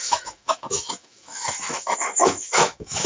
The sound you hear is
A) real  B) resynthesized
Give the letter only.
B